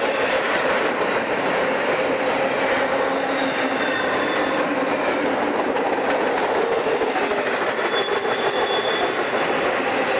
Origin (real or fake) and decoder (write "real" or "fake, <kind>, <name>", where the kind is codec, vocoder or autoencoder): real